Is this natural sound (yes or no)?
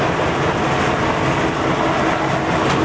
yes